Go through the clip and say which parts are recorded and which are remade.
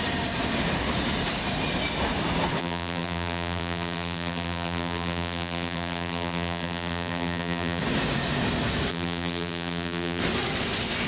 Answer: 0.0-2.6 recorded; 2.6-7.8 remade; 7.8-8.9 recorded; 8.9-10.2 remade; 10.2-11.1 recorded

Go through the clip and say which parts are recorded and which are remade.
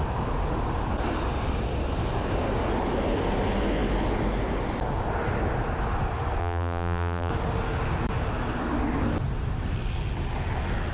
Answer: 0.0-6.4 recorded; 6.4-7.3 remade; 7.3-10.9 recorded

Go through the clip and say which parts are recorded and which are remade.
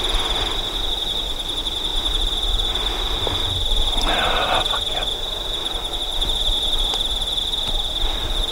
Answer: 0.0-8.5 recorded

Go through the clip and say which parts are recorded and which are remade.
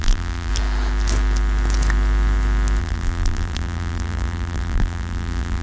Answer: 0.0-0.5 remade; 0.5-2.8 recorded; 2.8-5.6 remade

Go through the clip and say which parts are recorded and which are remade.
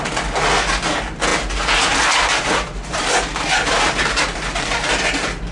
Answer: 0.0-1.3 recorded; 1.3-2.5 remade; 2.5-3.6 recorded; 3.6-5.0 remade; 5.0-5.5 recorded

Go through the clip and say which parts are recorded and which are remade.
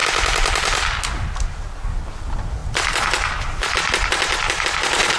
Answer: 0.0-2.6 recorded; 2.6-5.2 remade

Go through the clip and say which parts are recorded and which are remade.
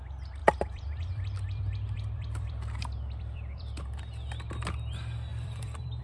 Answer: 0.0-0.4 recorded; 0.4-4.0 remade; 4.0-5.3 recorded; 5.3-6.0 remade